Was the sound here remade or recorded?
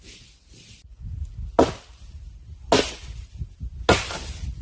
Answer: recorded